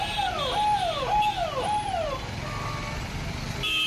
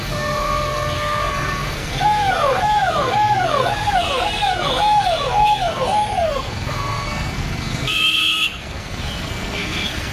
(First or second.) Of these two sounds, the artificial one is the second